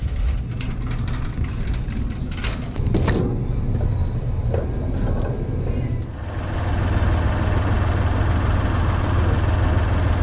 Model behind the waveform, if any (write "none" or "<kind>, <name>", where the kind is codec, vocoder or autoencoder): none